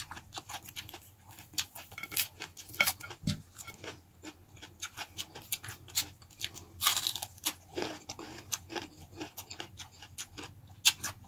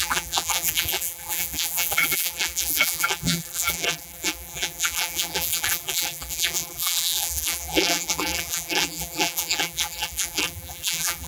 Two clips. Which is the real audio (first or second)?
first